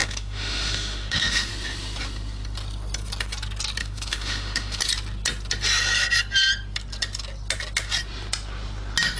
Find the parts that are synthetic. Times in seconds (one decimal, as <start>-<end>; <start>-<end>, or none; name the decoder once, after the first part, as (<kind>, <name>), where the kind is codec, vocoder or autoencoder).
0.0-1.5 (autoencoder, DAC-VAE); 3.8-4.8